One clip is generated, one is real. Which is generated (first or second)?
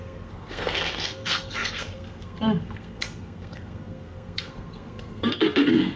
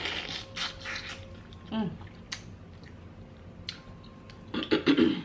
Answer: first